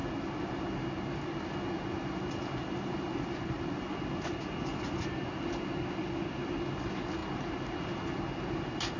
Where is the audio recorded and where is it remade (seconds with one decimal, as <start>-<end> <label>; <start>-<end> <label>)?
0.0-9.0 recorded